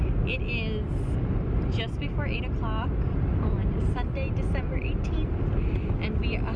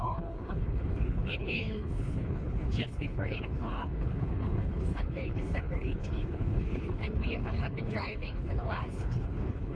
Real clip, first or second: first